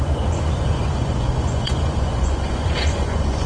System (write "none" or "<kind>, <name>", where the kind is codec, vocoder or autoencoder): vocoder, Vocos